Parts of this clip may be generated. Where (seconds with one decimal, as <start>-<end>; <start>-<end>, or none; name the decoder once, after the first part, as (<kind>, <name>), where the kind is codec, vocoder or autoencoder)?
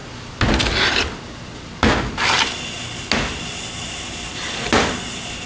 none